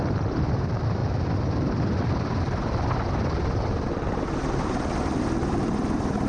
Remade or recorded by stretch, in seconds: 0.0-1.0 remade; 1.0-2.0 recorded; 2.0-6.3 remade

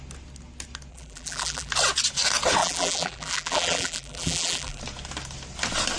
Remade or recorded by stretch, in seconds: 0.0-0.9 recorded; 0.9-1.7 remade; 1.7-2.6 recorded; 2.6-4.8 remade; 4.8-6.0 recorded

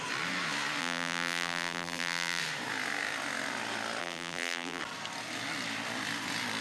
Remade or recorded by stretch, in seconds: 0.0-0.8 recorded; 0.8-2.4 remade; 2.4-4.0 recorded; 4.0-4.8 remade; 4.8-6.6 recorded